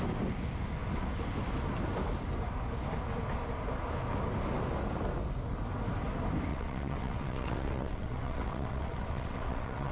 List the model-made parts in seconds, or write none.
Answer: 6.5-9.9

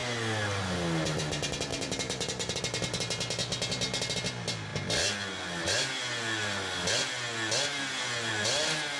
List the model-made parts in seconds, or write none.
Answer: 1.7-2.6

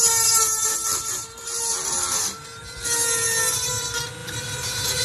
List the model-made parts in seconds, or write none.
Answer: 1.1-2.6; 4.2-5.0

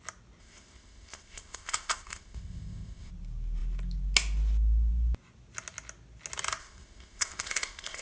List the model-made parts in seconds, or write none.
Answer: 0.4-3.1; 6.6-8.0

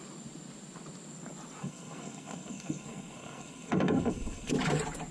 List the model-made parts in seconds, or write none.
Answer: 1.6-4.5